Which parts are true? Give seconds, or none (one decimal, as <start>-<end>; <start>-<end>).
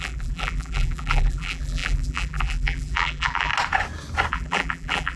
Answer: 3.5-4.3